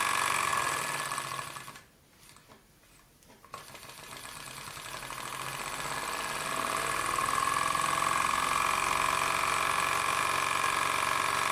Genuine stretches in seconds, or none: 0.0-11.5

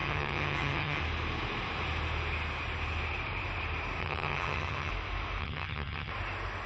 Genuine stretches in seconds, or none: 1.0-4.0; 4.9-5.4; 6.1-6.7

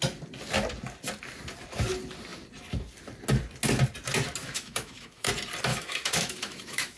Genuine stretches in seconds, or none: 0.0-4.4; 5.3-5.7

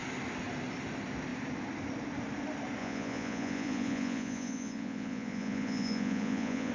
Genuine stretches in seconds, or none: 0.0-2.8

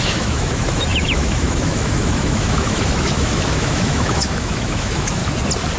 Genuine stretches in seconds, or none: 5.2-5.8